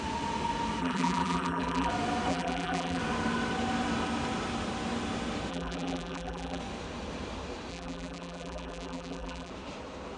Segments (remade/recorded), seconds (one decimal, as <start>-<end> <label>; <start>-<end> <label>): 0.0-0.8 recorded; 0.8-1.9 remade; 1.9-2.3 recorded; 2.3-3.0 remade; 3.0-5.5 recorded; 5.5-6.6 remade; 6.6-7.7 recorded; 7.7-9.5 remade; 9.5-10.2 recorded